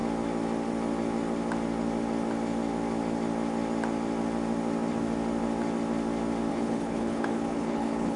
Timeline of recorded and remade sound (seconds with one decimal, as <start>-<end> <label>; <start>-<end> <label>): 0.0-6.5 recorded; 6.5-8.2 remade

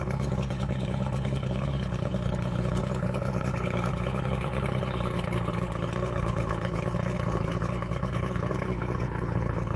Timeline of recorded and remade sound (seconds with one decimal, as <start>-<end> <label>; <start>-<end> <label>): 0.0-9.8 remade

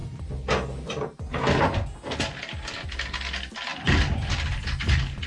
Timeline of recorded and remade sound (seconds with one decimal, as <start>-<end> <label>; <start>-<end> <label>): 0.0-5.3 recorded

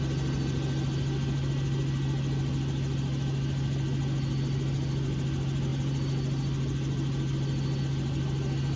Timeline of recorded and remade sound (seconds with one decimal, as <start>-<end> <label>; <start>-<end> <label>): 0.0-8.8 recorded